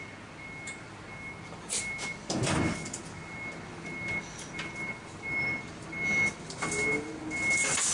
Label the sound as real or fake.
real